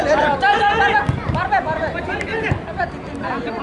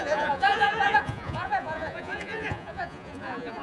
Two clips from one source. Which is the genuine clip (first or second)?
first